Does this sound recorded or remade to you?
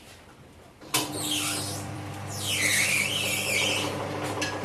remade